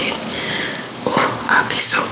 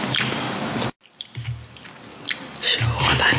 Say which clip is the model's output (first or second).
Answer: first